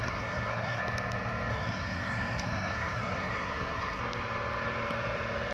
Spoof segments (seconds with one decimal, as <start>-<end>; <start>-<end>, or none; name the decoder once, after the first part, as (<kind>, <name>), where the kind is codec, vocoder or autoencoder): 0.0-0.8 (codec, SNAC); 1.5-4.0